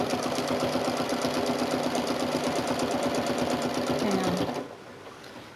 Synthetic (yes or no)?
no